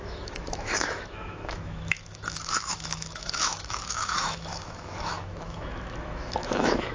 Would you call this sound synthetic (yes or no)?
yes